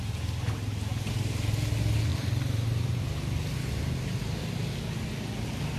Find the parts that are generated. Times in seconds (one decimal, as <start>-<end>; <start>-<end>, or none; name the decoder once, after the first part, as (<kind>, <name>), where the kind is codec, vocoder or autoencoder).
2.1-3.0 (vocoder, BigVGAN v2)